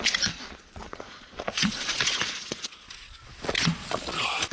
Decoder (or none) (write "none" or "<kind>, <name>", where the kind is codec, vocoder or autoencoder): vocoder, Vocos